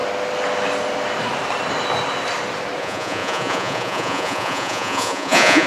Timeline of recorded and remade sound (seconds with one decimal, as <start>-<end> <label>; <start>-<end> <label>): 0.0-2.8 recorded; 2.8-5.7 remade